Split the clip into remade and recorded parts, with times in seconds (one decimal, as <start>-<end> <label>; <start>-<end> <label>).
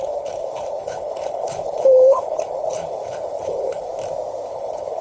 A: 0.0-3.9 remade; 3.9-4.5 recorded; 4.5-5.0 remade